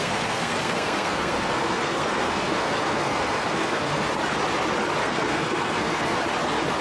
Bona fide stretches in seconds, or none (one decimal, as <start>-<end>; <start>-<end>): 4.1-5.0; 6.2-6.8